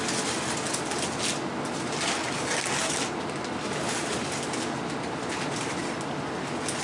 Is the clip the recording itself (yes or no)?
yes